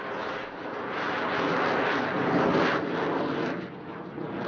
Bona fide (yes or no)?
yes